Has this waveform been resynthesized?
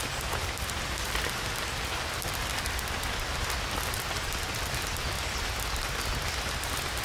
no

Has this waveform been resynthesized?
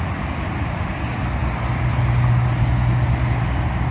no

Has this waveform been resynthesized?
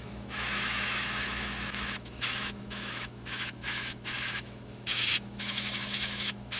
yes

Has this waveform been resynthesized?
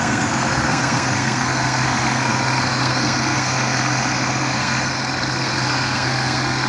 yes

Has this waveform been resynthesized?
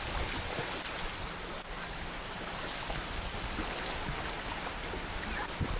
no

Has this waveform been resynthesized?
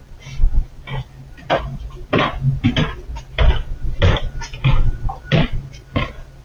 no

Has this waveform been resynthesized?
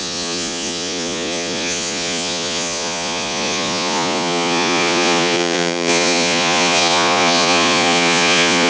yes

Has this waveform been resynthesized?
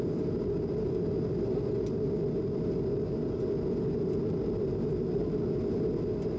no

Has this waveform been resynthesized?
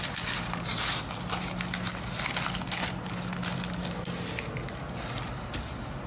no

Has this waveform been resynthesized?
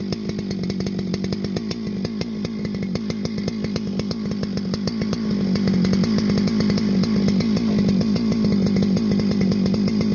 no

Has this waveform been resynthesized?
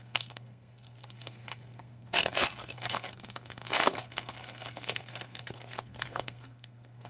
yes